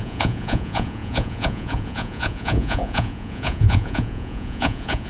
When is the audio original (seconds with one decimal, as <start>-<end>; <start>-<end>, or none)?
none